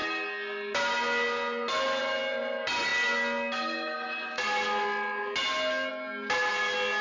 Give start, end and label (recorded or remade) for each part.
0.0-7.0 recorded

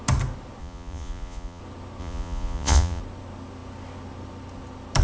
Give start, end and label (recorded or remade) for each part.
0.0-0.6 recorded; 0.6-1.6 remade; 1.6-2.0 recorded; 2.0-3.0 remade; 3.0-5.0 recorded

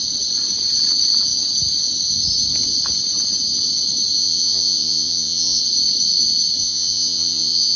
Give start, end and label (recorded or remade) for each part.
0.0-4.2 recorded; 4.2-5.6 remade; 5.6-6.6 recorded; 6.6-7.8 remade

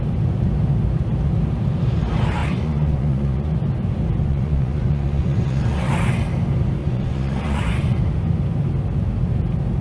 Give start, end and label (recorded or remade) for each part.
0.0-2.4 recorded; 2.4-3.6 remade; 3.6-4.2 recorded; 4.2-5.9 remade; 5.9-6.8 recorded; 6.8-8.0 remade; 8.0-9.8 recorded

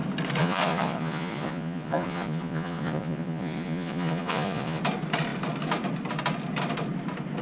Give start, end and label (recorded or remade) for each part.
0.0-0.4 recorded; 0.4-4.8 remade; 4.8-7.4 recorded

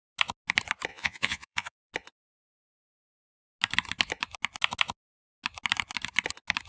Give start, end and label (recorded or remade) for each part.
0.0-0.9 recorded; 0.9-1.9 remade; 1.9-6.7 recorded